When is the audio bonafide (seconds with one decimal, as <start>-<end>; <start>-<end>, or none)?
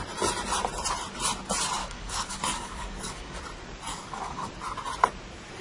0.0-1.8; 3.4-3.9; 4.5-5.6